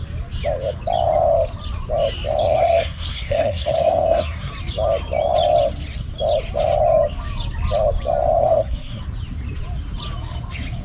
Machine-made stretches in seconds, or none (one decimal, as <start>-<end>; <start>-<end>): 2.4-4.5; 8.4-9.0